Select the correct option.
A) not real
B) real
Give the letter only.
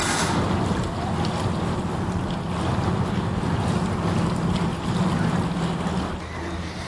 B